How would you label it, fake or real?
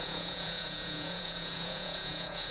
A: fake